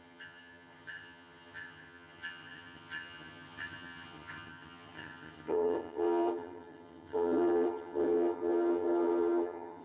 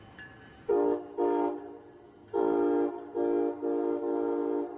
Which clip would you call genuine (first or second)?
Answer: second